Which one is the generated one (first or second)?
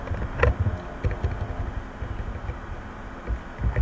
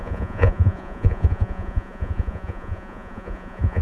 second